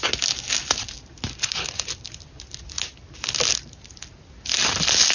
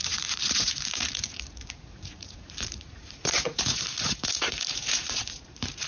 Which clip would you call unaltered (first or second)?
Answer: first